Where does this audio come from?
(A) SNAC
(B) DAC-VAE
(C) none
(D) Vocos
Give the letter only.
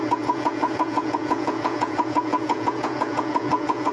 D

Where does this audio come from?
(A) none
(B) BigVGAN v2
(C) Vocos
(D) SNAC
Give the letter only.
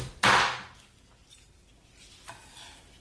A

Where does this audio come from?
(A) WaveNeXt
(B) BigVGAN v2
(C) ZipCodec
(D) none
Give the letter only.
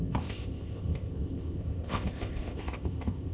C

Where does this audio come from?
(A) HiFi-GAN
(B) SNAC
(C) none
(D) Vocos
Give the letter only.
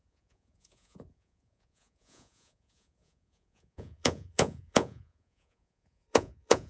D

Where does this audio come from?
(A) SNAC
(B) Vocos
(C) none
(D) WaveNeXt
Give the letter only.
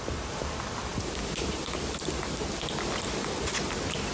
C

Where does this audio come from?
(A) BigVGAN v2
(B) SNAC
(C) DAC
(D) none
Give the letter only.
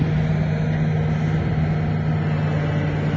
D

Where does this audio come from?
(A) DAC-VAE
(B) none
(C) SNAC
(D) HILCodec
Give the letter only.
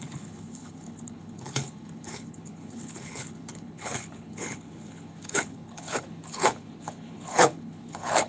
D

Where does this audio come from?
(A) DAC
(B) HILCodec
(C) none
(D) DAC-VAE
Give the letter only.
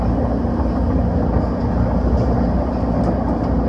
C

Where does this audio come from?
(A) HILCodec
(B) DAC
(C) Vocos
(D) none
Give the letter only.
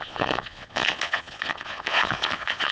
C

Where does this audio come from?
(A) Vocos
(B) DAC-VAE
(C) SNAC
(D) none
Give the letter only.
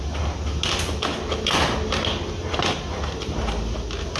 D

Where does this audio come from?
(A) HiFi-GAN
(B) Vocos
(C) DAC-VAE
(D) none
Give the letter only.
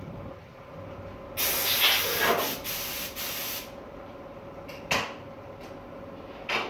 D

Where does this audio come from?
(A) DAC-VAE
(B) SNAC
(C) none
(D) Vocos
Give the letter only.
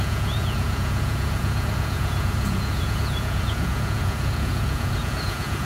D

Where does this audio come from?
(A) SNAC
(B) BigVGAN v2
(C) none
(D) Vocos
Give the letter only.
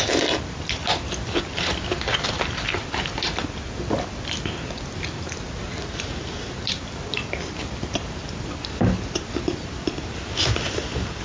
C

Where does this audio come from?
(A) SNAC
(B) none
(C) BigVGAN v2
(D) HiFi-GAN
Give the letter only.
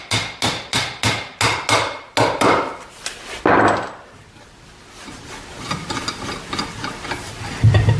B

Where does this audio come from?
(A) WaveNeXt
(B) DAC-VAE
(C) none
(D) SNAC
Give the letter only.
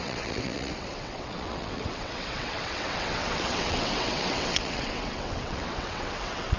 A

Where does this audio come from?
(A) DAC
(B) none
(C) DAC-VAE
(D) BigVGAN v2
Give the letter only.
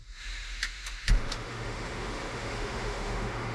C